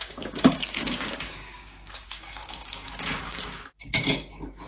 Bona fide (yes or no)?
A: no